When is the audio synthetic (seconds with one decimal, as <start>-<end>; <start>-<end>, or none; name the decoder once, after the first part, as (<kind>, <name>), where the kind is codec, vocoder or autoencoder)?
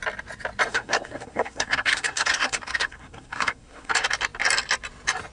0.7-3.9 (codec, SNAC)